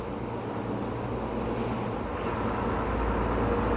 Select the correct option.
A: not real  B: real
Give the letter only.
B